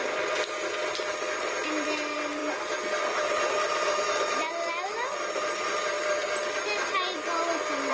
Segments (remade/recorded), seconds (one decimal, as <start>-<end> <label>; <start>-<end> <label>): 0.0-7.9 recorded

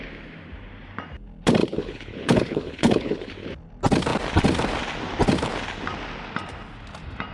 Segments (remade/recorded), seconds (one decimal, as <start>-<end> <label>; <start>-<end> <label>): 0.0-1.6 recorded; 1.6-3.3 remade; 3.3-7.3 recorded

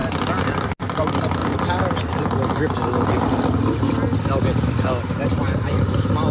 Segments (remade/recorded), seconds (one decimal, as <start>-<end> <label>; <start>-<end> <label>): 0.0-0.8 recorded; 0.8-1.4 remade; 1.4-5.2 recorded; 5.2-6.3 remade